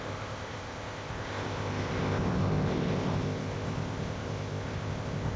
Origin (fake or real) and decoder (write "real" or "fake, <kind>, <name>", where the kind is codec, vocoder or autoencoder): fake, codec, ZipCodec